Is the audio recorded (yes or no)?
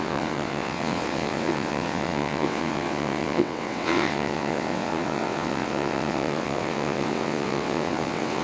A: no